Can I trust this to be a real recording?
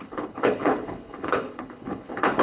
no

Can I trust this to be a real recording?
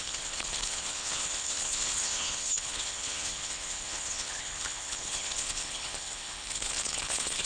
no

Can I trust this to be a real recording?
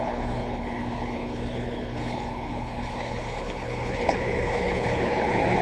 no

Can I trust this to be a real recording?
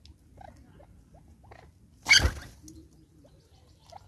yes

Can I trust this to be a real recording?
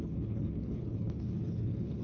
no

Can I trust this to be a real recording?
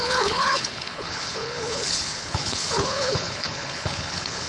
no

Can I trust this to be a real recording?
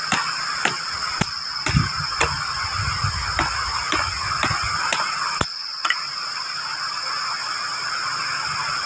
yes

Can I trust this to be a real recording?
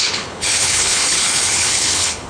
no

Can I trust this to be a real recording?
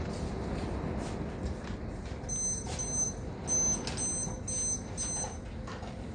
yes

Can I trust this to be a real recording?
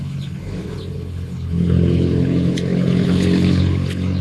no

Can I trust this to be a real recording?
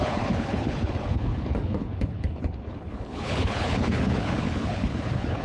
no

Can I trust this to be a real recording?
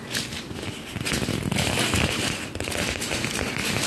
yes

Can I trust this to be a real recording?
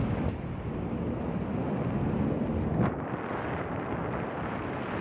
yes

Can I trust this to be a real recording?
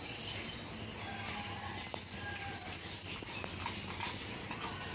yes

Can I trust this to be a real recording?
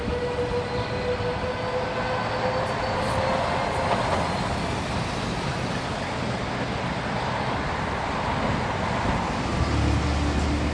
yes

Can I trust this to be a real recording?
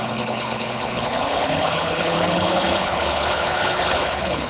no